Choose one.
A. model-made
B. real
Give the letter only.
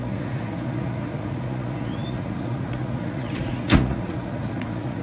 A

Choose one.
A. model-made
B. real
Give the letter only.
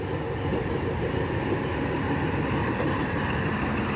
B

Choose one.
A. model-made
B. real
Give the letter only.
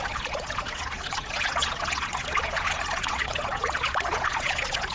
A